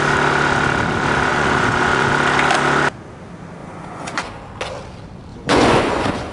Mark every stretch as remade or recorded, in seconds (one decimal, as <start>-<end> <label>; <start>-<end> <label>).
0.0-1.3 recorded; 1.3-2.1 remade; 2.1-3.6 recorded; 3.6-4.2 remade; 4.2-5.3 recorded; 5.3-6.3 remade